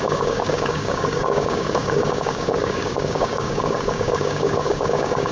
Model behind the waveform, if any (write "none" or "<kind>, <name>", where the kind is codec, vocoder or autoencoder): codec, DAC